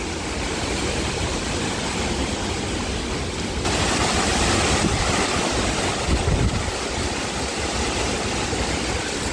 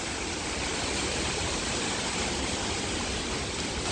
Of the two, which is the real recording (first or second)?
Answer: first